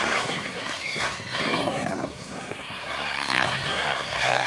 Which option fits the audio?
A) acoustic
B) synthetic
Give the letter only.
B